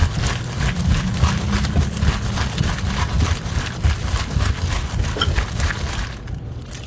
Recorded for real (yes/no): yes